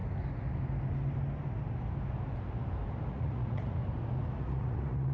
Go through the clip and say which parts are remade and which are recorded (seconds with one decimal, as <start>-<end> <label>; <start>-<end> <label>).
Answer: 0.0-3.1 recorded; 3.1-3.8 remade; 3.8-4.4 recorded; 4.4-5.1 remade